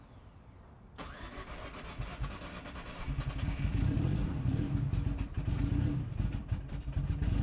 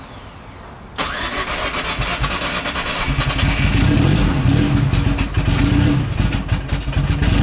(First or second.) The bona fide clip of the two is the second